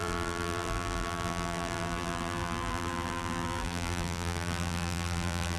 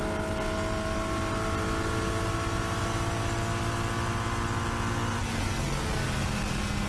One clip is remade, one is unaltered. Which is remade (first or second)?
first